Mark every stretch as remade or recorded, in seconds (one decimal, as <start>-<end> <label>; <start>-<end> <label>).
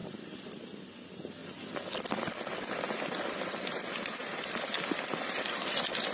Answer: 0.0-1.4 remade; 1.4-3.1 recorded; 3.1-6.1 remade